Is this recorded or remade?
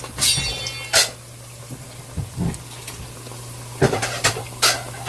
recorded